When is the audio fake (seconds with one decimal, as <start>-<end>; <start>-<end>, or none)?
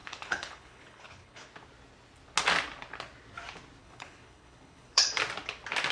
0.0-1.5; 3.8-5.2